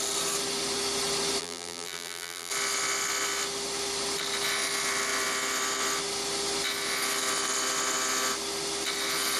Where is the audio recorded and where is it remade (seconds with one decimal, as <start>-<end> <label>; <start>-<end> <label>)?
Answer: 0.0-1.4 recorded; 1.4-2.5 remade; 2.5-9.4 recorded